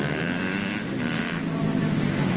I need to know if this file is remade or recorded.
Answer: remade